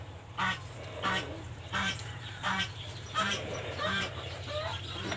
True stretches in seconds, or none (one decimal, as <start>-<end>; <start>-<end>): 0.0-1.3; 4.4-5.2